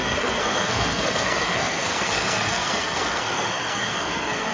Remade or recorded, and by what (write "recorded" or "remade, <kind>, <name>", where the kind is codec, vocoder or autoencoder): remade, codec, SNAC